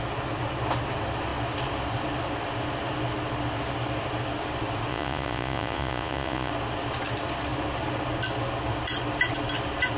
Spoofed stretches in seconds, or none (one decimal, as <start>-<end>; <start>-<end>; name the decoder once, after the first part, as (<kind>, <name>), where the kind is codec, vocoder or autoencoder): 4.9-6.5 (vocoder, Vocos)